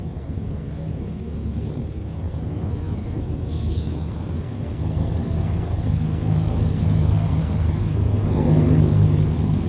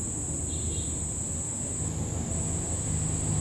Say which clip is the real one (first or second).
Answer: second